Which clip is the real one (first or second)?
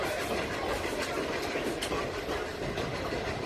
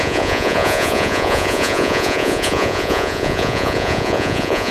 first